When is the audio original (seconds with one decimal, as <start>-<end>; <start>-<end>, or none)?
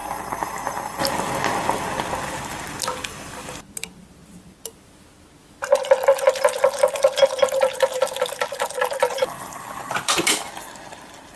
0.0-11.4